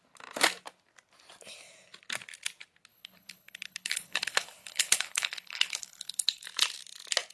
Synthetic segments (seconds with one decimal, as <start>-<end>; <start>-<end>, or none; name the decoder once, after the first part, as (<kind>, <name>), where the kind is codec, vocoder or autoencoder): 2.9-6.4 (codec, HILCodec)